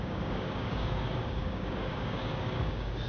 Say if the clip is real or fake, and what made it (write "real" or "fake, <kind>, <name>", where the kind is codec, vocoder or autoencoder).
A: fake, codec, DAC